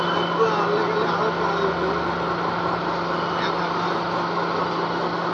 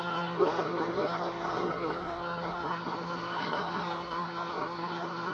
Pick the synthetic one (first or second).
second